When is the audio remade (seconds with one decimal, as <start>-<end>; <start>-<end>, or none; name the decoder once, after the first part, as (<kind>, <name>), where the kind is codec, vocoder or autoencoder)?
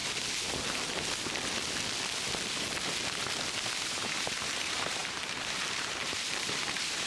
3.8-7.1 (vocoder, BigVGAN v2)